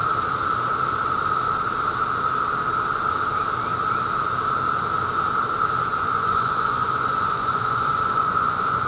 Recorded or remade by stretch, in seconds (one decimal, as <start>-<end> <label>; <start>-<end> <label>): 0.0-5.9 recorded; 5.9-8.9 remade